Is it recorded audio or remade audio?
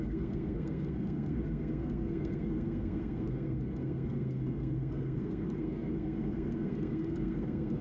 remade